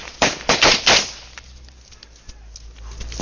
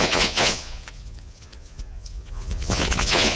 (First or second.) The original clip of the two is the first